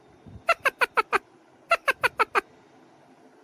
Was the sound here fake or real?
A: real